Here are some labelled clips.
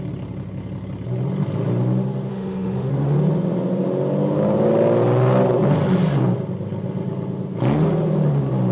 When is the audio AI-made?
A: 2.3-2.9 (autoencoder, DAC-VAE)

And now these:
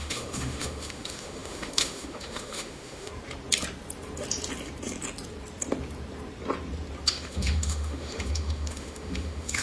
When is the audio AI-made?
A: 0.0-3.1 (autoencoder, DAC-VAE); 7.1-9.6

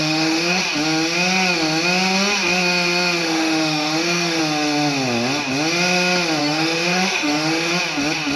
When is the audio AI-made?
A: 0.0-0.6 (autoencoder, DAC-VAE); 3.2-4.4; 6.4-7.7

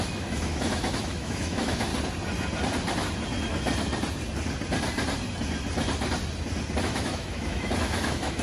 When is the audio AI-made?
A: 0.0-1.9 (autoencoder, DAC-VAE); 6.8-8.4

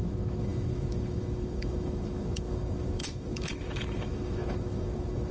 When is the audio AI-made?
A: 0.0-5.3 (autoencoder, DAC-VAE)